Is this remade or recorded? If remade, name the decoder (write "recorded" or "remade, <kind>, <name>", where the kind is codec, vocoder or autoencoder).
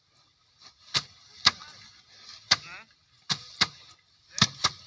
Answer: recorded